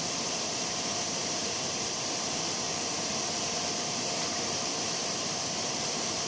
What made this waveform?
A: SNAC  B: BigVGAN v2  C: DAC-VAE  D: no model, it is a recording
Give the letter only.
B